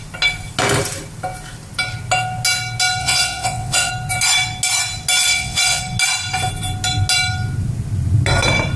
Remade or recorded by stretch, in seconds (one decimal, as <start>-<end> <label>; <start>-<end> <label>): 0.0-3.0 recorded; 3.0-3.9 remade; 3.9-5.3 recorded; 5.3-5.8 remade; 5.8-8.8 recorded